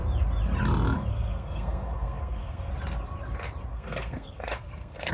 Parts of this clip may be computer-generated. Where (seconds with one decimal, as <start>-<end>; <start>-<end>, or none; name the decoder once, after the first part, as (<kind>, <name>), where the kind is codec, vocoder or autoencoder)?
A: 1.1-2.7 (codec, SNAC); 3.7-5.1